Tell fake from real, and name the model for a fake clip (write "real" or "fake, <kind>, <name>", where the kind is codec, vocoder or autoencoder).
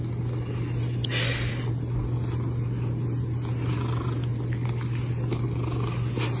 real